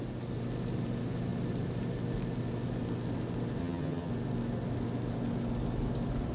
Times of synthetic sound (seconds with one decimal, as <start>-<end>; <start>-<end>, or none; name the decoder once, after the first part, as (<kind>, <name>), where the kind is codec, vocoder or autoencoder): 3.6-4.1 (vocoder, HiFi-GAN)